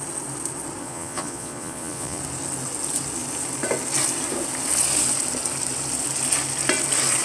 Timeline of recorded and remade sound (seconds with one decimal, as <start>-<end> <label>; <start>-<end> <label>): 0.0-0.8 recorded; 0.8-2.2 remade; 2.2-7.2 recorded